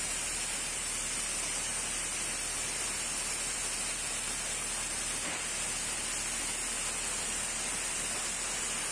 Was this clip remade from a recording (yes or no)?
no